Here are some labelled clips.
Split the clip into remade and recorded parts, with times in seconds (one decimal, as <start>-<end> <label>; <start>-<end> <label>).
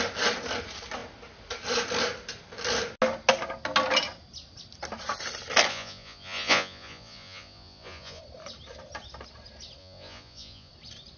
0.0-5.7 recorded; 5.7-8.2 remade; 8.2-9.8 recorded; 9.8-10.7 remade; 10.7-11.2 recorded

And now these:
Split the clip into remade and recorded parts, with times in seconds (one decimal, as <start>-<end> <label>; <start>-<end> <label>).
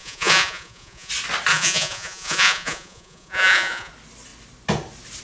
0.0-1.1 remade; 1.1-1.5 recorded; 1.5-3.9 remade; 3.9-5.2 recorded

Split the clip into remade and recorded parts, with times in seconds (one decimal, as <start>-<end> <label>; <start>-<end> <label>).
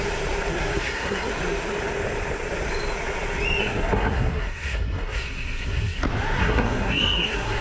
0.0-0.5 recorded; 0.5-1.3 remade; 1.3-3.6 recorded; 3.6-6.0 remade; 6.0-6.4 recorded; 6.4-7.6 remade